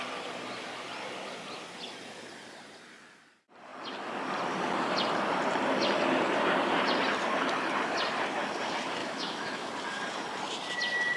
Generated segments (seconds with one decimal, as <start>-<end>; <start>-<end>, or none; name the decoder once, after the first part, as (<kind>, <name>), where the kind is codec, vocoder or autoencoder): 9.0-9.7 (autoencoder, DAC-VAE)